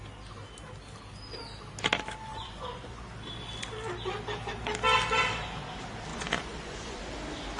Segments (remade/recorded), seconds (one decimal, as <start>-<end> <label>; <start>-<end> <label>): 0.0-2.3 recorded; 2.3-3.0 remade; 3.0-6.1 recorded; 6.1-7.0 remade; 7.0-7.6 recorded